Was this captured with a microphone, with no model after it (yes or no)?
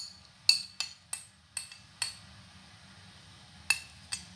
yes